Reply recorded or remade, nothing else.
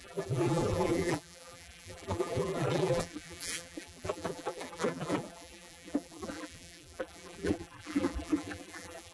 remade